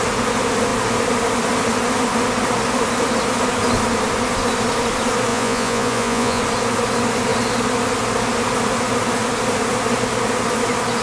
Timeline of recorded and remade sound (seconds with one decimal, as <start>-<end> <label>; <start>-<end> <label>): 0.0-5.3 recorded; 5.3-6.4 remade; 6.4-11.0 recorded